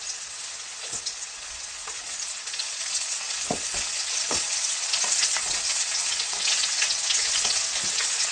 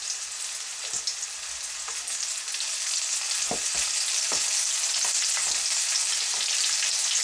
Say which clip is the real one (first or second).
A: second